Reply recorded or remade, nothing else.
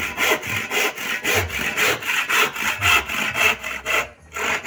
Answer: recorded